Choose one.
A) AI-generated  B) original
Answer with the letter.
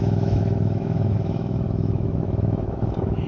A